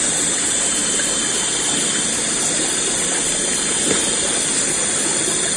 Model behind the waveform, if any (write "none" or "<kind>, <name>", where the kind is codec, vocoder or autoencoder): none